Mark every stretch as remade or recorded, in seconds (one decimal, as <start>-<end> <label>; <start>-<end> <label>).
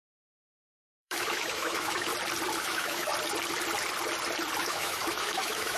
0.0-2.1 remade; 2.1-2.6 recorded; 2.6-3.1 remade; 3.1-4.6 recorded; 4.6-5.8 remade